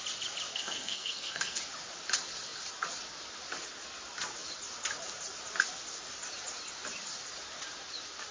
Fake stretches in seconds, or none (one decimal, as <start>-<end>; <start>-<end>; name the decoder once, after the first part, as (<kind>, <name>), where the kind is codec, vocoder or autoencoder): 0.5-1.6 (codec, SNAC)